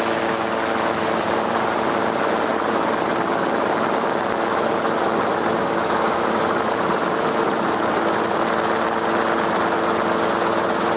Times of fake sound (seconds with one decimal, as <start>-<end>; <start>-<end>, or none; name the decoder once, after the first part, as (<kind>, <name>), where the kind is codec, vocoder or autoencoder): 5.5-6.4 (codec, DAC)